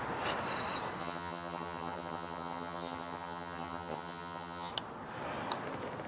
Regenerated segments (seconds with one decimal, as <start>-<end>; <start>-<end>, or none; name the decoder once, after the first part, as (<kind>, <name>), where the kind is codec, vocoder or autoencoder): 1.0-4.7 (vocoder, HiFi-GAN)